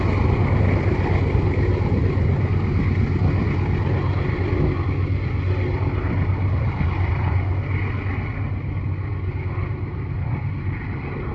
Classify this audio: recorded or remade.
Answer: recorded